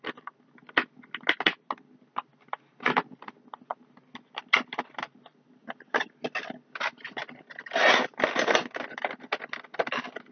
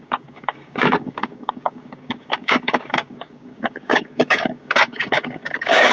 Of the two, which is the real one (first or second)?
first